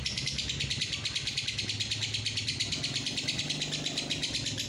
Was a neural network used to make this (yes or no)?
no